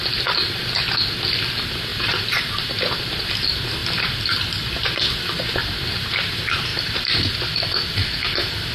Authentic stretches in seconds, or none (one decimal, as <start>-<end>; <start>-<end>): 0.0-1.9; 3.3-6.7